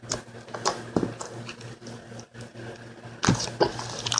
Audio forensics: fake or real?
real